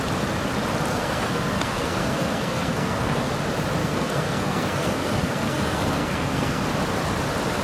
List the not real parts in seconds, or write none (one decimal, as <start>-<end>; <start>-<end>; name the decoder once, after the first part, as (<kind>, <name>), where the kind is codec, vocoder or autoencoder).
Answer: 0.9-3.3 (codec, SNAC); 3.8-6.6